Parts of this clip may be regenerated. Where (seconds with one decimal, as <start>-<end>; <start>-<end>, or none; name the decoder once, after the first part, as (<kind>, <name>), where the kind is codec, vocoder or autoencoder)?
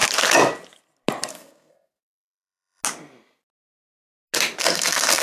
1.3-2.8 (codec, SNAC); 4.6-5.2